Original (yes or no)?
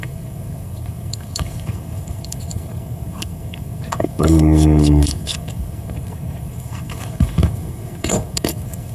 no